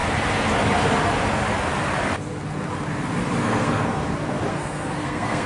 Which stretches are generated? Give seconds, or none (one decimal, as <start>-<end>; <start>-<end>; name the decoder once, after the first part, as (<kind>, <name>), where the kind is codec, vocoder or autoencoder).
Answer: 3.4-4.0 (codec, SNAC); 4.5-5.5